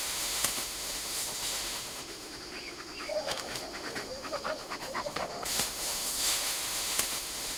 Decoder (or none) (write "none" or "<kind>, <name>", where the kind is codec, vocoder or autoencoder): autoencoder, DAC-VAE